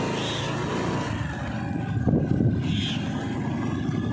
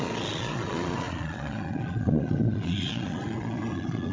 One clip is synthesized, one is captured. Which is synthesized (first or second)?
second